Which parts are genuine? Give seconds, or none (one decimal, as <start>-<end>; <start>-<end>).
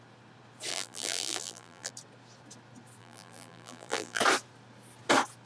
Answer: 0.0-0.7; 1.9-3.0; 4.2-5.5